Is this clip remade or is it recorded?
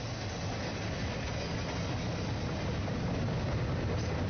recorded